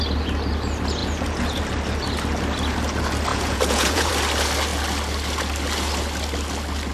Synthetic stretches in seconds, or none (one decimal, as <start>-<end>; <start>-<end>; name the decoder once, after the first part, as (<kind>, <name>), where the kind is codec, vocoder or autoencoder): 1.0-1.6 (vocoder, Vocos); 3.3-4.1